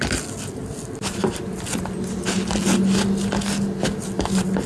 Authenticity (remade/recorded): recorded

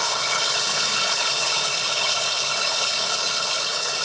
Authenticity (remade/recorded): remade